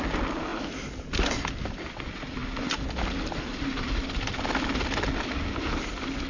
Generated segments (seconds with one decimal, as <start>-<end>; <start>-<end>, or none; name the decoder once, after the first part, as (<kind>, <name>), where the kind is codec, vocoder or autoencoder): none